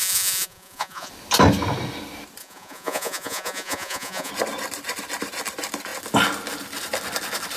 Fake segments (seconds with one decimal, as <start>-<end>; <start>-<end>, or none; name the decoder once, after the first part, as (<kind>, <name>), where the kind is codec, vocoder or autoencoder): 0.0-1.1 (vocoder, Vocos); 2.4-4.3